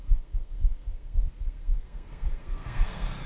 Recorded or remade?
remade